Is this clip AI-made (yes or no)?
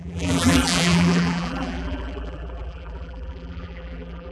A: yes